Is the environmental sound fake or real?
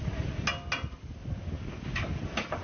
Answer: real